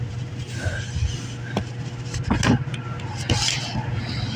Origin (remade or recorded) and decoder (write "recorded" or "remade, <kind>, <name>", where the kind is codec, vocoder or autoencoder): recorded